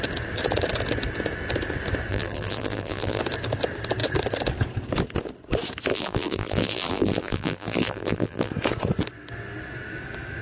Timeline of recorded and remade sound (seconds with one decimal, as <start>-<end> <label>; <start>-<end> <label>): 0.0-2.1 recorded; 2.1-3.2 remade; 3.2-5.9 recorded; 5.9-8.5 remade; 8.5-10.4 recorded